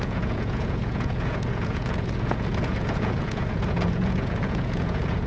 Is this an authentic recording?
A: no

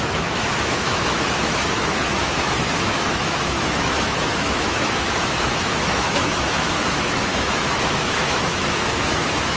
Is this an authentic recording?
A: no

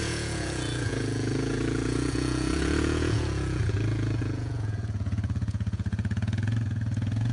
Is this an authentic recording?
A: no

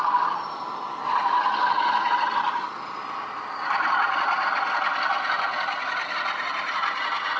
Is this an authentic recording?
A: yes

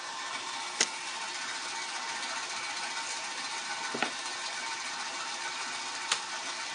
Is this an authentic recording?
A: yes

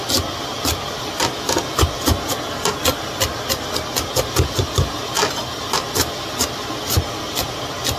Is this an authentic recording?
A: yes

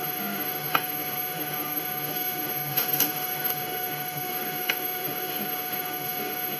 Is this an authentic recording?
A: no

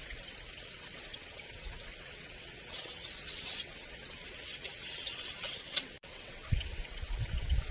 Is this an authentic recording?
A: no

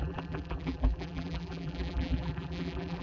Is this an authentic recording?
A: no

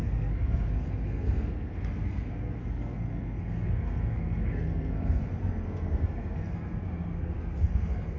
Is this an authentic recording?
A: no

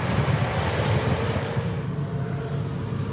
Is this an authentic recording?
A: yes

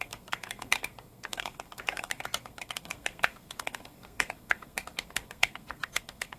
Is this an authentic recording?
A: no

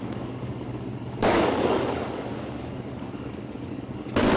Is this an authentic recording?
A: no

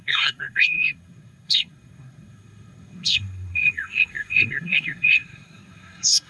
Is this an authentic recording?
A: no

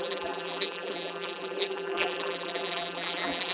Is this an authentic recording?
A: no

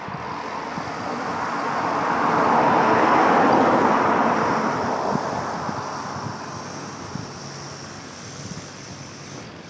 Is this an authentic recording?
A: yes